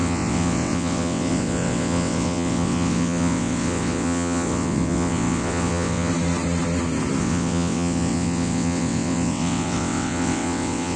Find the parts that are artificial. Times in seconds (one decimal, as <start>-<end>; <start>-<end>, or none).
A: 0.0-6.1; 7.2-11.0